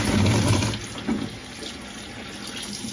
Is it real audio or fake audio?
real